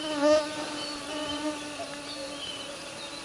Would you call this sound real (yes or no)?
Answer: yes